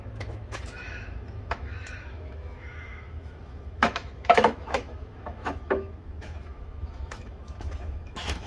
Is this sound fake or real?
fake